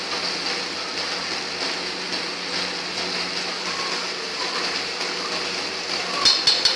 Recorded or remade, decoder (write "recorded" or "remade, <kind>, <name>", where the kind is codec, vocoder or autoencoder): recorded